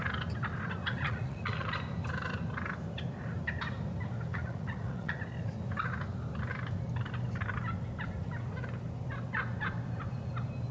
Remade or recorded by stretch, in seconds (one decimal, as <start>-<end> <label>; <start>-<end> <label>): 0.0-0.8 recorded; 0.8-1.7 remade; 1.7-4.3 recorded; 4.3-5.2 remade; 5.2-10.7 recorded